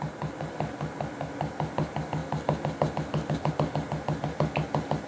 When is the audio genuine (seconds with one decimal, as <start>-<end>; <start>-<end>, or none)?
0.0-5.1